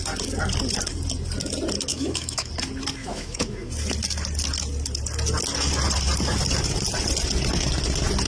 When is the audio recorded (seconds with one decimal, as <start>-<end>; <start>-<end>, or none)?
0.0-1.9; 2.5-3.0; 3.7-8.3